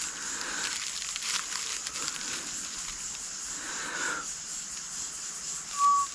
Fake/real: real